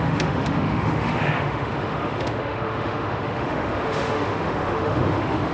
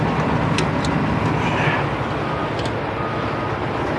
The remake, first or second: first